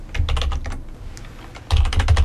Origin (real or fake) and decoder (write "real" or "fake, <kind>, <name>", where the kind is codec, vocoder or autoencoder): real